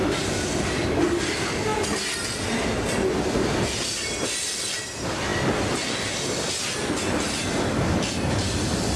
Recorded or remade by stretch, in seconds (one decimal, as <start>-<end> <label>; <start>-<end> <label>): 0.0-9.0 recorded